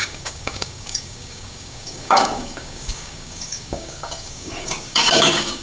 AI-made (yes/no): yes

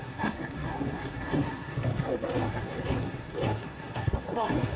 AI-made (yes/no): yes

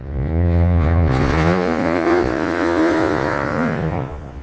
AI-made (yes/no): yes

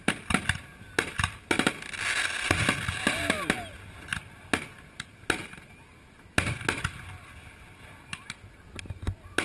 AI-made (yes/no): no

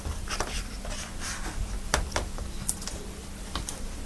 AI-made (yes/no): yes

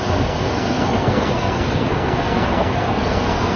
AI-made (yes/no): yes